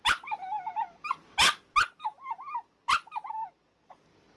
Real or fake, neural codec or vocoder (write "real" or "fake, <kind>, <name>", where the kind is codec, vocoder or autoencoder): real